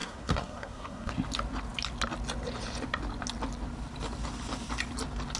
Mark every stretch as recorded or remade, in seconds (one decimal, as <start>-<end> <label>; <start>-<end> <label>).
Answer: 0.0-1.1 remade; 1.1-5.4 recorded